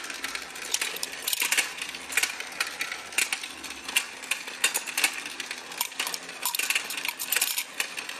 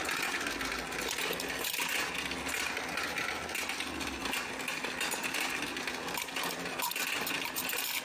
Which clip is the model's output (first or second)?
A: first